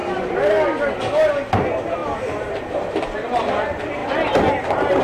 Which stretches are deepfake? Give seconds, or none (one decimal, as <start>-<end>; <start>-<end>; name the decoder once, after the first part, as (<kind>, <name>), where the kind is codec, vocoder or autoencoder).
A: none